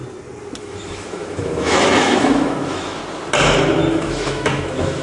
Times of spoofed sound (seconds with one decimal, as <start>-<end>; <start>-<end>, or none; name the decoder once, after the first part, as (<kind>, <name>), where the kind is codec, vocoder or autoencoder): 0.6-3.0 (autoencoder, DAC-VAE); 3.9-5.0